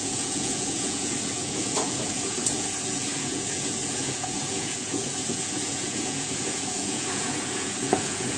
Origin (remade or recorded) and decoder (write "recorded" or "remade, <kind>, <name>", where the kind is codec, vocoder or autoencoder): remade, vocoder, Vocos